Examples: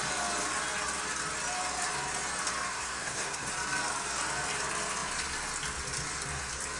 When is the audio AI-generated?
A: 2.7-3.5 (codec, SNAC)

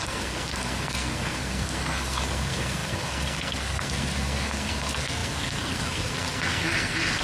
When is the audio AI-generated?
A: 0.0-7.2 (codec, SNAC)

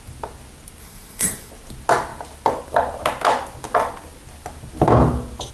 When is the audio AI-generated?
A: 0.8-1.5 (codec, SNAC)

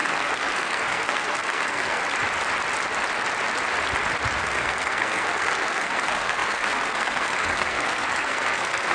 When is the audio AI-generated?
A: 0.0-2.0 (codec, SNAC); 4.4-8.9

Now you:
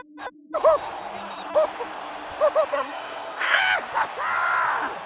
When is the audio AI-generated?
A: 2.7-3.6 (codec, SNAC)

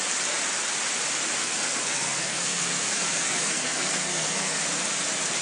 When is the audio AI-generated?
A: 1.4-4.6 (codec, SNAC)